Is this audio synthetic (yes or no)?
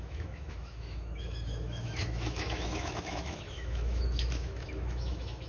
yes